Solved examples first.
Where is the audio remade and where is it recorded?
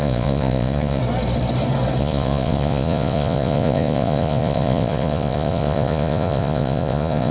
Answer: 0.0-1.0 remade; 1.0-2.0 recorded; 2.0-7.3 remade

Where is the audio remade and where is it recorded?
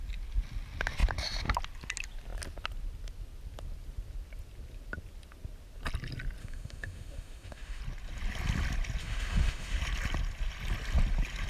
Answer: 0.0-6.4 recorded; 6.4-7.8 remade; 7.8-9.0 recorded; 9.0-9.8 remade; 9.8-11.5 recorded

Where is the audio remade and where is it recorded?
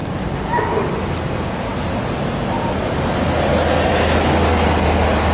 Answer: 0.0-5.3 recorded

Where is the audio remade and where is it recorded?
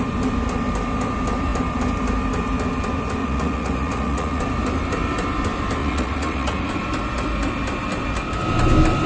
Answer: 0.0-3.2 recorded; 3.2-4.4 remade; 4.4-5.8 recorded; 5.8-6.7 remade; 6.7-9.1 recorded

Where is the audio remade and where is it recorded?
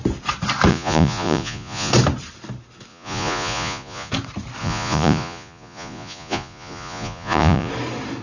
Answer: 0.0-0.7 recorded; 0.7-1.9 remade; 1.9-2.9 recorded; 2.9-4.1 remade; 4.1-4.6 recorded; 4.6-7.7 remade; 7.7-8.2 recorded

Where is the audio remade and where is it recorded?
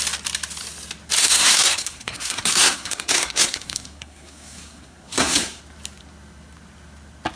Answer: 0.0-1.2 recorded; 1.2-5.6 remade; 5.6-7.4 recorded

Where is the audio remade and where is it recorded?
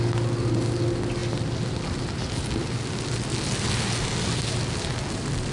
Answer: 0.0-5.5 recorded